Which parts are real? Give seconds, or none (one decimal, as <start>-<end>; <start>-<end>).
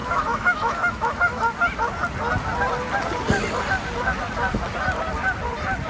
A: 1.4-5.9